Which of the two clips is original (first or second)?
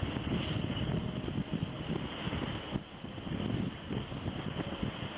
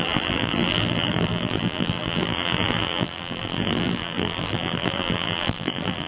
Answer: first